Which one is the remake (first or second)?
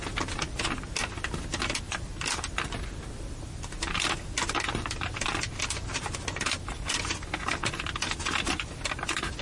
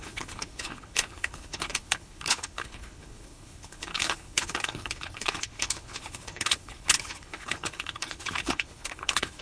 second